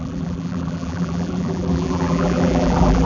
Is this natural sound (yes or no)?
no